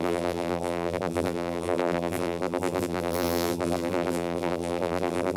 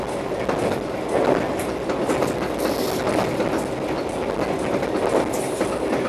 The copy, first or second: first